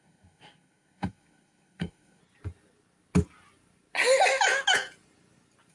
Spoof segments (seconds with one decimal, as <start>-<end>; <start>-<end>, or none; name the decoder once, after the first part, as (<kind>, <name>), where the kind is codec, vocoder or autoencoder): 0.0-2.2 (codec, SNAC)

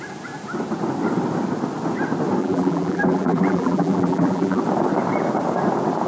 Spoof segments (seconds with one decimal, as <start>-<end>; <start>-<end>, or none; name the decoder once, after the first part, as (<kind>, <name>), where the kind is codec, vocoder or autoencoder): 2.4-4.6 (vocoder, BigVGAN v2)

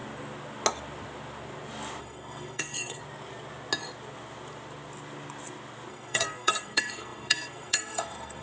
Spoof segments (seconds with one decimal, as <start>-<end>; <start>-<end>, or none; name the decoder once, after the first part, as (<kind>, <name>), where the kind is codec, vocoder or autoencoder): 2.0-3.0 (codec, SNAC); 5.9-8.4